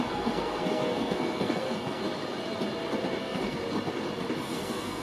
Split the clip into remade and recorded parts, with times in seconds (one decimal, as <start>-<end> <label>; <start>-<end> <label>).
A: 0.0-2.0 remade; 2.0-3.2 recorded; 3.2-3.6 remade; 3.6-4.5 recorded; 4.5-5.0 remade